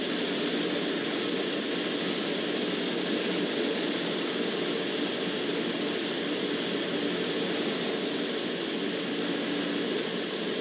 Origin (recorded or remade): recorded